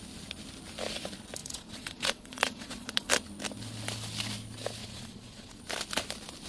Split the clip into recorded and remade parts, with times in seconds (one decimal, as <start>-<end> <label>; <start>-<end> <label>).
0.0-1.4 recorded; 1.4-3.1 remade; 3.1-4.8 recorded; 4.8-5.6 remade; 5.6-6.5 recorded